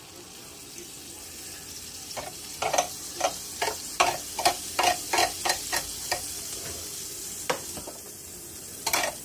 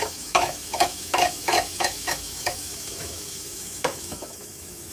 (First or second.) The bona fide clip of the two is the first